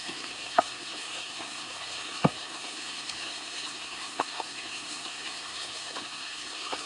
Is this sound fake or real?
fake